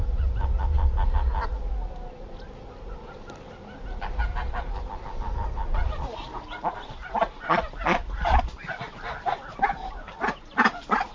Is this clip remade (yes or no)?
no